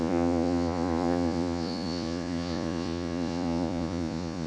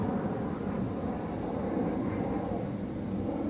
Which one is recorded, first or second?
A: second